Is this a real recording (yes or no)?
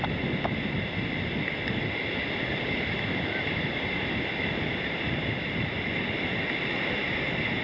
yes